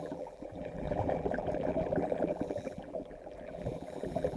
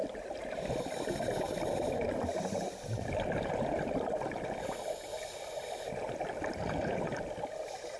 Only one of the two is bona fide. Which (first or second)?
second